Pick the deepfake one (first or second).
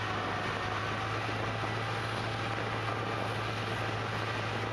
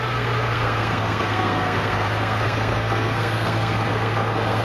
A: second